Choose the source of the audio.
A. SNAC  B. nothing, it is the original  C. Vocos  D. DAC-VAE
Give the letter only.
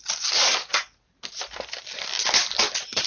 B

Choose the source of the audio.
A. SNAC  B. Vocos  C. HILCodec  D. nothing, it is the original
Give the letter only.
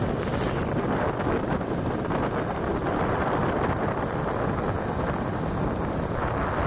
D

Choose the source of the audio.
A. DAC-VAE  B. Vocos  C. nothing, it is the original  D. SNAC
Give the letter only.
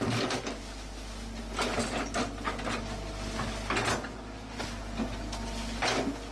C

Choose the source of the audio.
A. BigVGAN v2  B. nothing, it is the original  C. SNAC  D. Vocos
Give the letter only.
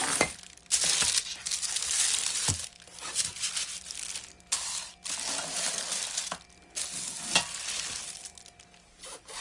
B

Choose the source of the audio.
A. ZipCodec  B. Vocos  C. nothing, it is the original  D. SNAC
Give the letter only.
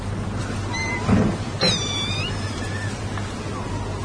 C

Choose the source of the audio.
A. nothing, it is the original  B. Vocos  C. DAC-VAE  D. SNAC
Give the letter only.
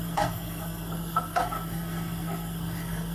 D